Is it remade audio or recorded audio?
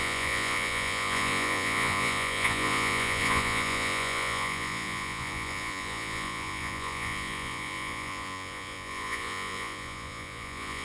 remade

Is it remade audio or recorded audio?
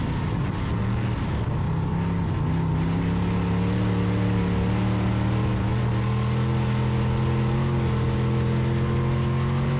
recorded